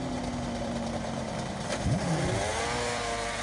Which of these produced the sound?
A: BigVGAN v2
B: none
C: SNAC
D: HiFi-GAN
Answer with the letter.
A